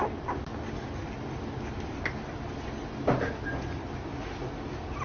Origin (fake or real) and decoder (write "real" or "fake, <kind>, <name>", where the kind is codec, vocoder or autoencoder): real